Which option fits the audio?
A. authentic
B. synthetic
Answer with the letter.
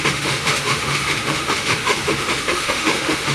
B